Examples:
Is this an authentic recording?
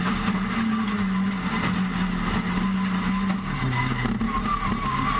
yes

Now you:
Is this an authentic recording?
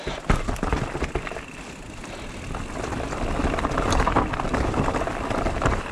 yes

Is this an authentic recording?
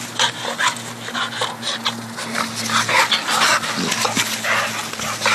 yes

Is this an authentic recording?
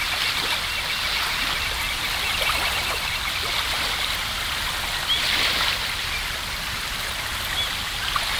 yes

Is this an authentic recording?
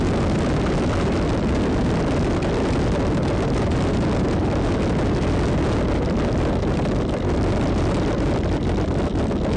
yes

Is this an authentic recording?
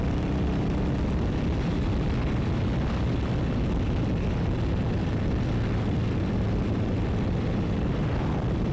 no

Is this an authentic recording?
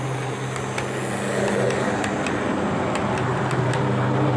yes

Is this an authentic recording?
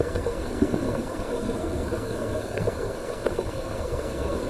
no